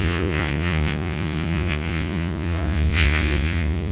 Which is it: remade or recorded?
remade